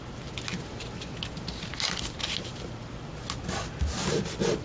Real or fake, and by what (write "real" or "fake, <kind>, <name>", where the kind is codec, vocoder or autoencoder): real